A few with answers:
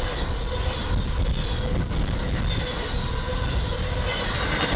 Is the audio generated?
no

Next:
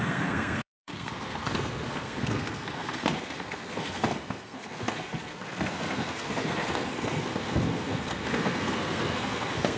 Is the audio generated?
yes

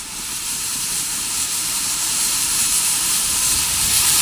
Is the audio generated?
yes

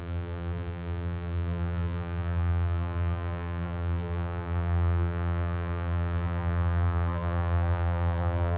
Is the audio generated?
yes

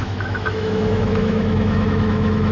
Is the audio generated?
yes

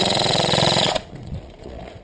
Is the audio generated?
yes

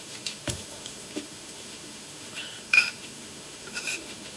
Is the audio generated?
yes